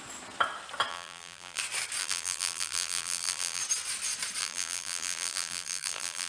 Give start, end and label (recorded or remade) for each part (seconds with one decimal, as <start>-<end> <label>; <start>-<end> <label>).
0.0-0.9 recorded; 0.9-1.6 remade; 1.6-2.0 recorded; 2.0-3.6 remade; 3.6-4.4 recorded; 4.4-6.3 remade